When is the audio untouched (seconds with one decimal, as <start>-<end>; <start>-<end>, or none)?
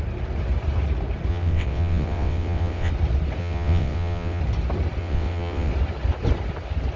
0.0-1.3; 2.9-3.4; 4.4-5.0; 5.7-7.0